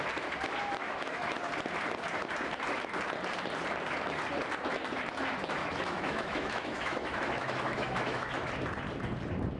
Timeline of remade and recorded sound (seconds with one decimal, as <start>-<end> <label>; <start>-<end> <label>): 0.0-0.8 recorded; 0.8-1.3 remade; 1.3-5.6 recorded; 5.6-8.5 remade; 8.5-9.6 recorded